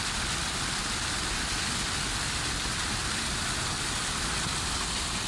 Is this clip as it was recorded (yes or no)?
yes